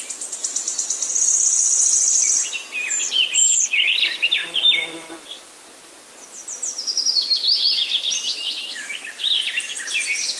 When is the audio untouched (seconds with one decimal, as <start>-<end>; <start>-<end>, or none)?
0.0-4.4; 5.1-8.3; 9.4-10.4